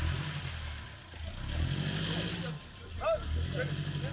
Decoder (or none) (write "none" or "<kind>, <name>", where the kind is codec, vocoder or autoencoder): none